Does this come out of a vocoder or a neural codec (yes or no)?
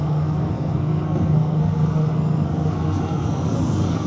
yes